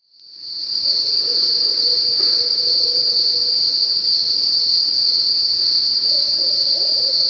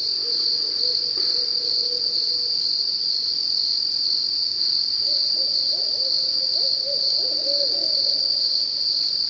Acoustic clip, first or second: second